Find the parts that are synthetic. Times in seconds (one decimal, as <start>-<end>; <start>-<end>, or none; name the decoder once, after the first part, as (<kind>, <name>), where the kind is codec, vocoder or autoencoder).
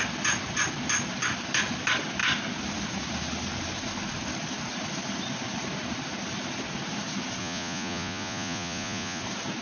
7.4-9.2 (vocoder, Vocos)